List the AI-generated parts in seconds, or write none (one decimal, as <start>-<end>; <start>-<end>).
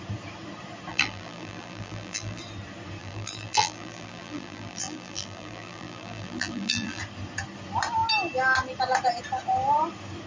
0.9-2.4; 3.0-7.0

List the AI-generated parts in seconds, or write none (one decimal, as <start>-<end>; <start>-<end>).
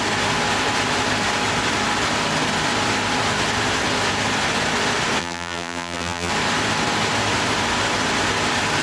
5.2-6.3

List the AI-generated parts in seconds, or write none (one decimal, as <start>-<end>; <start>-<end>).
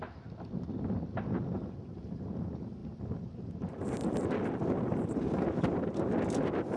2.8-5.2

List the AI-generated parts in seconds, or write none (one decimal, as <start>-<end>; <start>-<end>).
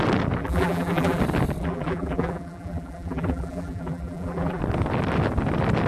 0.4-1.2; 1.6-4.6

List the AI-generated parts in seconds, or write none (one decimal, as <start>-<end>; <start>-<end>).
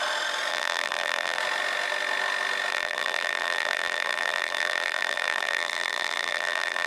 0.5-1.4; 2.7-6.9